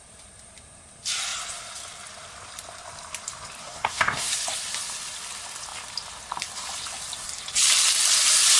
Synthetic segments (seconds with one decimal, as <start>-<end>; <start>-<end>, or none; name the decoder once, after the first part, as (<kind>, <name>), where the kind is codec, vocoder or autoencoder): 3.6-4.3 (codec, SNAC)